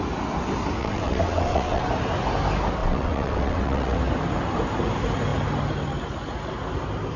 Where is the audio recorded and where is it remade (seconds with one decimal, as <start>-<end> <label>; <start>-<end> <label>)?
0.0-0.8 recorded; 0.8-1.8 remade; 1.8-2.8 recorded; 2.8-4.0 remade; 4.0-7.2 recorded